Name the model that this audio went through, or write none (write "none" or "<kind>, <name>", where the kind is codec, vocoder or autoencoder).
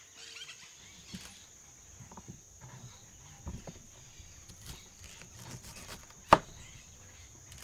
none